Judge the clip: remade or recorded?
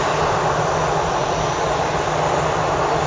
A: recorded